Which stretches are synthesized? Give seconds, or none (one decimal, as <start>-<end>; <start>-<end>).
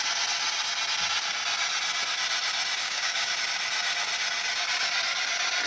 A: 2.8-3.3